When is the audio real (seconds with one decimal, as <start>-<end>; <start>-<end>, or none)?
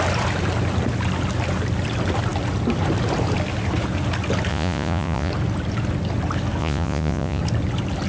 0.0-4.5; 5.3-6.6; 7.4-8.1